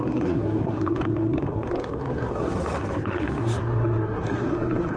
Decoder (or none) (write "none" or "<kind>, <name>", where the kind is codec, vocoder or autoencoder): codec, SNAC